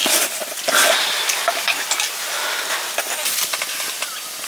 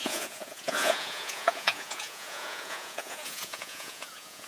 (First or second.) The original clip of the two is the first